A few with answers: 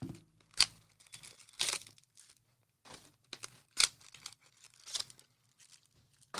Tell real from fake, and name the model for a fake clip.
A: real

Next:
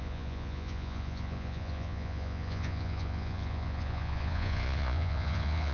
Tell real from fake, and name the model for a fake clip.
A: fake, vocoder, Vocos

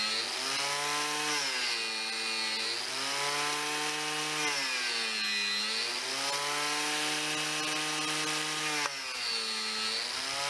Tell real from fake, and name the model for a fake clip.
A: real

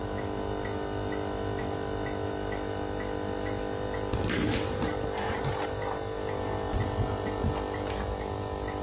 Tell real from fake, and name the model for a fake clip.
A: real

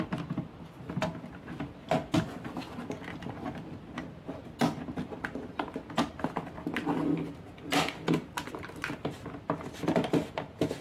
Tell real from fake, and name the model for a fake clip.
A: real